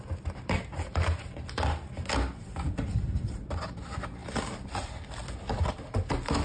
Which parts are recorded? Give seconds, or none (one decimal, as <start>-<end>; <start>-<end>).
0.0-6.4